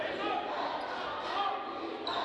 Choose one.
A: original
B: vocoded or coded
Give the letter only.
A